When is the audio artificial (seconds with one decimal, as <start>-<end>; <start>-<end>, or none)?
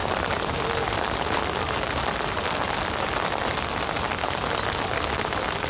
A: none